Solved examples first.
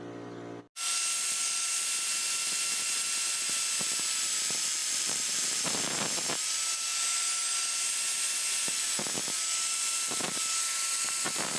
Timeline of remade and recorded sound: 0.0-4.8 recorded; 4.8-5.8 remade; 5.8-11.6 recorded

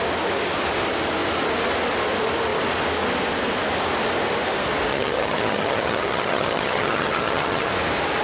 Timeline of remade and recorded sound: 0.0-4.9 recorded; 4.9-7.7 remade; 7.7-8.2 recorded

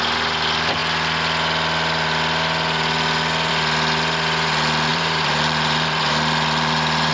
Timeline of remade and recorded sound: 0.0-4.9 recorded; 4.9-7.1 remade

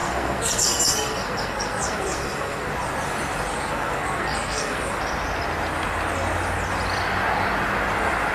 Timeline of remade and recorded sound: 0.0-2.7 remade; 2.7-3.5 recorded; 3.5-5.0 remade; 5.0-8.3 recorded

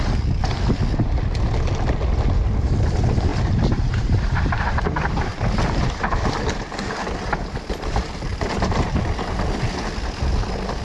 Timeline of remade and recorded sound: 0.0-3.3 recorded; 3.3-5.6 remade; 5.6-8.3 recorded; 8.3-9.4 remade; 9.4-10.8 recorded

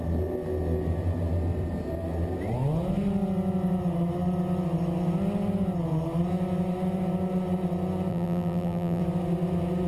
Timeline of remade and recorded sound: 0.0-8.1 recorded; 8.1-9.0 remade; 9.0-9.9 recorded